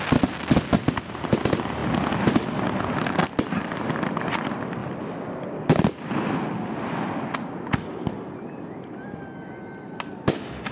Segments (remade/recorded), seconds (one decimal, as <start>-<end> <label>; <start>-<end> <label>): 0.0-10.7 recorded